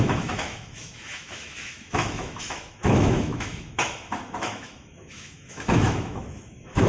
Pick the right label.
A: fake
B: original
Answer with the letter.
A